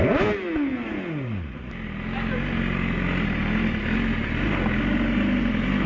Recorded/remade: recorded